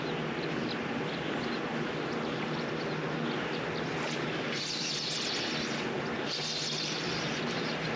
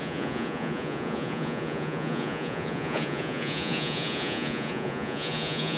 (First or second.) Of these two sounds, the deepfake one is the second